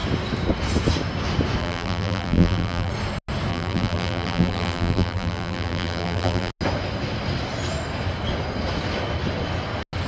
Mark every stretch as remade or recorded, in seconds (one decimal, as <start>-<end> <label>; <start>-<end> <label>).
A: 0.0-1.6 recorded; 1.6-2.9 remade; 2.9-3.5 recorded; 3.5-6.5 remade; 6.5-10.1 recorded

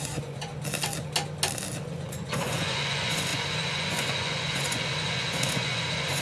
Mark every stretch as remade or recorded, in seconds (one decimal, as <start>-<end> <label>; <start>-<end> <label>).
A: 0.0-0.5 remade; 0.5-1.8 recorded; 1.8-6.2 remade

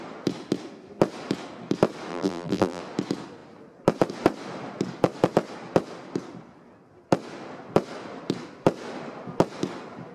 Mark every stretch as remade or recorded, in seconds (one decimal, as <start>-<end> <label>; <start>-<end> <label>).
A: 0.0-2.1 recorded; 2.1-2.8 remade; 2.8-10.1 recorded

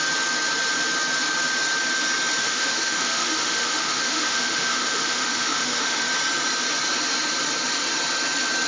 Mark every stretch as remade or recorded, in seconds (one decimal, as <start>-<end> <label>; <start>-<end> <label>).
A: 0.0-2.4 recorded; 2.4-6.1 remade; 6.1-8.7 recorded

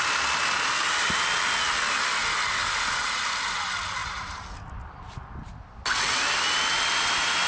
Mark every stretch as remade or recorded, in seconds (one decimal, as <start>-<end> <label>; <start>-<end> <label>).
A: 0.0-7.5 recorded